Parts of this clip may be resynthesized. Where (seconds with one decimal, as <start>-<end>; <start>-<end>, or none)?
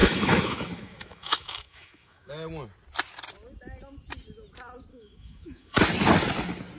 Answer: 0.0-2.3; 4.9-5.8